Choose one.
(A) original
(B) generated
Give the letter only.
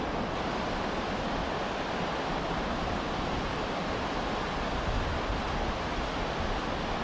A